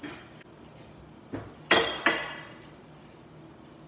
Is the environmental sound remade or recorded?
recorded